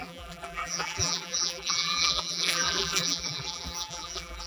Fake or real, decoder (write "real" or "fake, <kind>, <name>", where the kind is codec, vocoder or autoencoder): fake, vocoder, BigVGAN v2